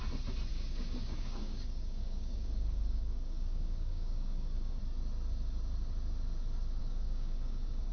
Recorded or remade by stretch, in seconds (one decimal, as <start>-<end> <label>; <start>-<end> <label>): 0.0-0.5 recorded; 0.5-4.8 remade; 4.8-6.8 recorded; 6.8-7.9 remade